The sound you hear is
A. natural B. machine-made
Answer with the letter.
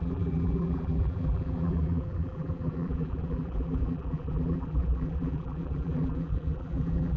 B